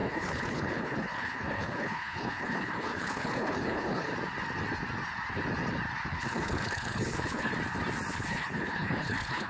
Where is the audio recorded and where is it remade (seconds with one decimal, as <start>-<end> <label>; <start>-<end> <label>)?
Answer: 0.0-4.1 remade; 4.1-6.1 recorded; 6.1-7.5 remade; 7.5-8.1 recorded; 8.1-9.5 remade